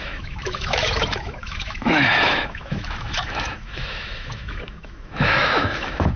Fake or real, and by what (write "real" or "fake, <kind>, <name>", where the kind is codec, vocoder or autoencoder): fake, autoencoder, DAC-VAE